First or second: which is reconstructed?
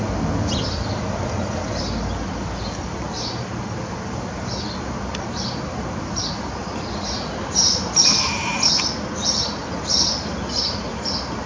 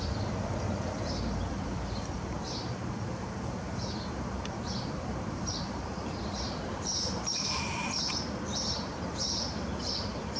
second